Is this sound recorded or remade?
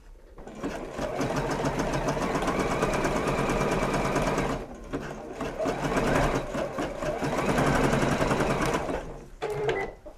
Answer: remade